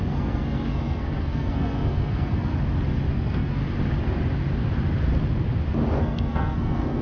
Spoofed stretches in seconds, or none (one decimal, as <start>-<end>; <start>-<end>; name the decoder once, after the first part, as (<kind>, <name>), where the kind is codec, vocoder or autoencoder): 0.0-2.5 (codec, SNAC); 3.1-3.6; 6.0-7.0